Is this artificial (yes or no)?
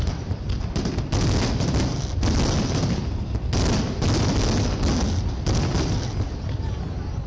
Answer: no